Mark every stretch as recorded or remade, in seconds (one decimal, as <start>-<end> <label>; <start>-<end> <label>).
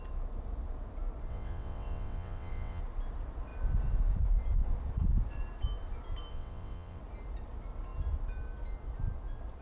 0.0-1.3 recorded; 1.3-2.8 remade; 2.8-6.3 recorded; 6.3-7.0 remade; 7.0-9.6 recorded